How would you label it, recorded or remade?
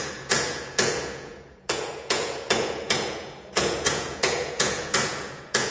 remade